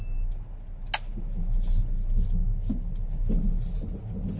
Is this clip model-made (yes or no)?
no